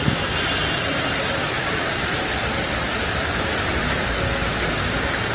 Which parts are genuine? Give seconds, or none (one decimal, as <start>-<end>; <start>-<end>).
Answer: 0.0-1.6; 2.0-4.7